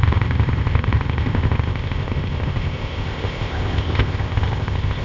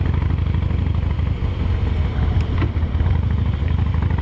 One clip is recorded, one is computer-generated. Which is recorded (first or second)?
second